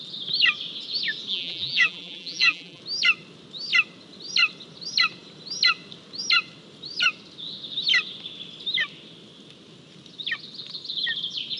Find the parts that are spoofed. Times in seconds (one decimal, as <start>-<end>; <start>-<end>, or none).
1.3-2.8